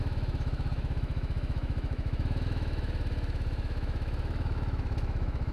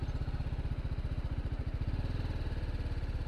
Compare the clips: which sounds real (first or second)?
second